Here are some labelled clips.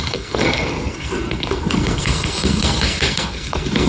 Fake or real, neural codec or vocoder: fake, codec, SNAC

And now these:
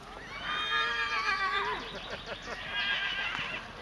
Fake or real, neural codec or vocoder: real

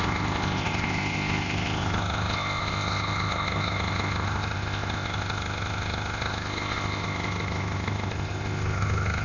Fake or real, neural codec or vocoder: fake, codec, ZipCodec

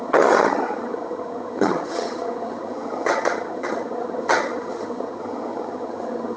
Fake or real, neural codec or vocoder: fake, vocoder, HiFi-GAN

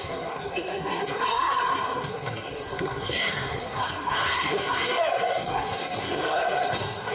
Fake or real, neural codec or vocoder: fake, codec, SNAC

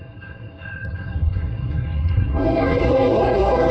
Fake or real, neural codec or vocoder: fake, codec, SNAC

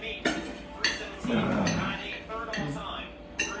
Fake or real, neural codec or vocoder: real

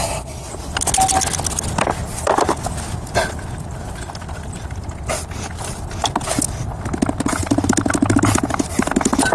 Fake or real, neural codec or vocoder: real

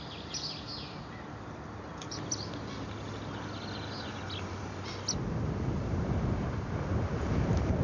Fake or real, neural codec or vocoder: real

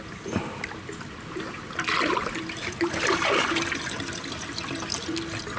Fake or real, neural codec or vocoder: real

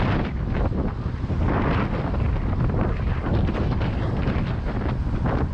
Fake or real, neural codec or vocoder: real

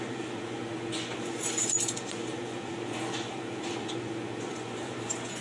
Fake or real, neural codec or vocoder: fake, vocoder, Vocos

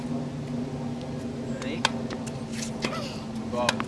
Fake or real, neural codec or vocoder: real